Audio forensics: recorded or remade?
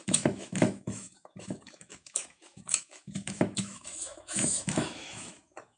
remade